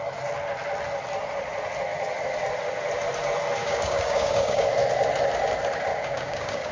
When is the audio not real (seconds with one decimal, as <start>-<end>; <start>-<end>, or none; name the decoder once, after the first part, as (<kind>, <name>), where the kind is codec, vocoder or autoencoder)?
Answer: 3.6-4.7 (codec, DAC); 5.9-6.7